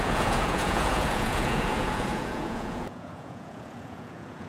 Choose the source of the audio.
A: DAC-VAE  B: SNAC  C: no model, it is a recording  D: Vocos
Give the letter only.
D